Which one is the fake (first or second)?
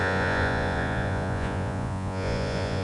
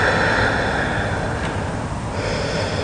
first